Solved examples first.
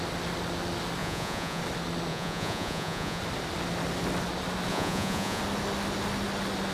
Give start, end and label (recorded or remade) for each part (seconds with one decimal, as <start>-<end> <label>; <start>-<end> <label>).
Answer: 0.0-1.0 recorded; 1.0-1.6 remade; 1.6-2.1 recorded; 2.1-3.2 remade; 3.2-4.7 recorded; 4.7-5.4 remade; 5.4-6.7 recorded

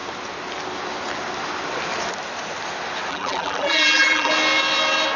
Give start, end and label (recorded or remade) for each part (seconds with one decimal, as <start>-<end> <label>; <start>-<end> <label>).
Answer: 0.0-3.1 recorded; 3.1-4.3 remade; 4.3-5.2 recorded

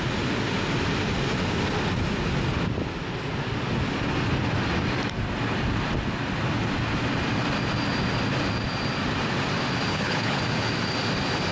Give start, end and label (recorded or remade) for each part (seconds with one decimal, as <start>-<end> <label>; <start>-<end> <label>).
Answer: 0.0-9.9 recorded; 9.9-10.4 remade; 10.4-11.5 recorded

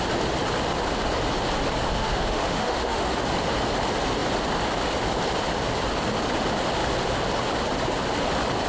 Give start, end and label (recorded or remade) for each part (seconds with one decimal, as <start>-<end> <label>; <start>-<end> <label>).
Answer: 0.0-1.9 recorded; 1.9-3.2 remade; 3.2-8.7 recorded